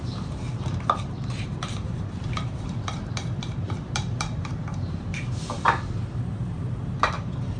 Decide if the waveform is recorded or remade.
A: remade